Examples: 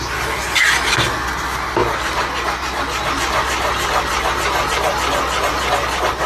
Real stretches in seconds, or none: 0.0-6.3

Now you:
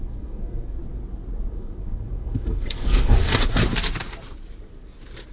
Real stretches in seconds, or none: 0.8-1.5; 3.3-5.3

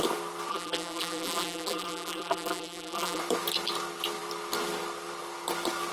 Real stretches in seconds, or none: 0.0-0.5; 3.2-5.9

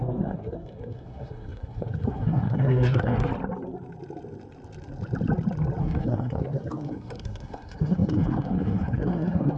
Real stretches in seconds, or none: 3.3-5.8

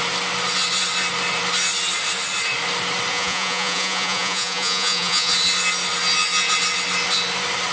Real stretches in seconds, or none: 0.0-3.1; 5.3-7.7